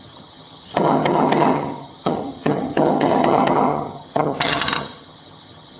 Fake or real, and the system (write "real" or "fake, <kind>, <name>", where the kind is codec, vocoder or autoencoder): fake, vocoder, HiFi-GAN